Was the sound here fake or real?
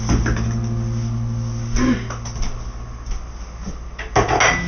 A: real